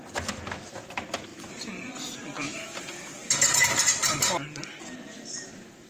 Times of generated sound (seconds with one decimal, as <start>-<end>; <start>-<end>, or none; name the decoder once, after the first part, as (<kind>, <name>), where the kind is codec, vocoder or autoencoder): none